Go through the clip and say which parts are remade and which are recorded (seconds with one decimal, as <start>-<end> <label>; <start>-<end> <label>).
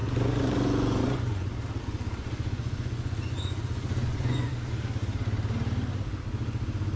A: 0.0-1.5 remade; 1.5-2.2 recorded; 2.2-4.5 remade; 4.5-7.0 recorded